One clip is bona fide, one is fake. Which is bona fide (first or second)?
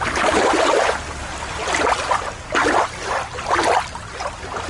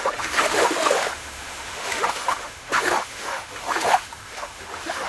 first